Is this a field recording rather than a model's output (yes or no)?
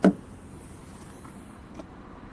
yes